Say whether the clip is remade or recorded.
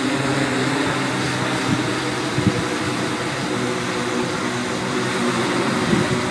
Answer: recorded